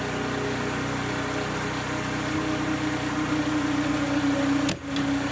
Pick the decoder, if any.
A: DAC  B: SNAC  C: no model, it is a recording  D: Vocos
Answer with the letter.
C